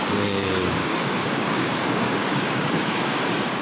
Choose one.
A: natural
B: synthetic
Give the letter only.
B